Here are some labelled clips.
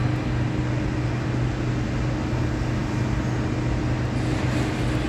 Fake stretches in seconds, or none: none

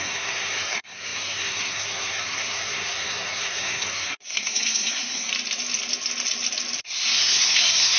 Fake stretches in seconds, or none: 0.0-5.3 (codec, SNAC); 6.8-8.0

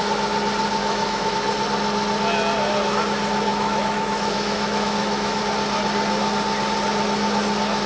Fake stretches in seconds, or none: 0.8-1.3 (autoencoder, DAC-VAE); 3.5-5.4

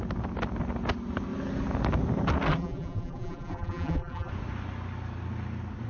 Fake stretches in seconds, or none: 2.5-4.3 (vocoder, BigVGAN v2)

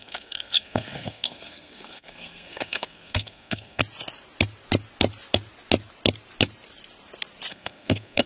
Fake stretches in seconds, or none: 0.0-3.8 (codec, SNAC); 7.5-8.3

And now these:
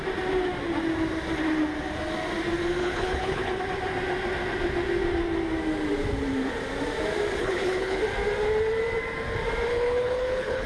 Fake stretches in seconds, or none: 2.8-3.6 (codec, HILCodec); 7.4-8.0; 9.7-10.7